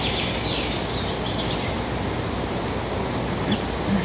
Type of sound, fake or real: real